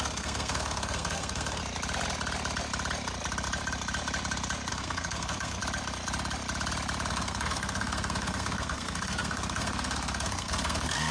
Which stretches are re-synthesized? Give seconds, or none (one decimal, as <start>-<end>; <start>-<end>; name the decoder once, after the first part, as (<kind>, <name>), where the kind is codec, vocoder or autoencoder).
0.0-1.6 (codec, SNAC); 4.7-5.6; 7.1-11.1